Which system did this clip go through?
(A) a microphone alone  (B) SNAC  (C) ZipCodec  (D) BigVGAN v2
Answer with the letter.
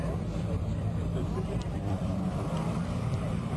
D